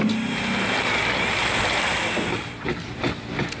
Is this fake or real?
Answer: real